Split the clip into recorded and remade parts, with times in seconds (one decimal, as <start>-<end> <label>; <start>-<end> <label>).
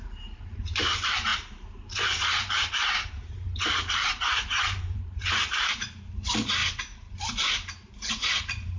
0.0-6.6 remade; 6.6-7.3 recorded; 7.3-8.8 remade